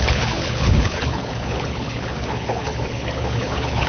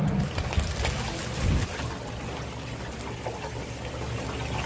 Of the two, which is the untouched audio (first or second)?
second